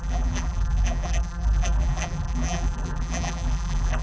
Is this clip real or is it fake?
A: fake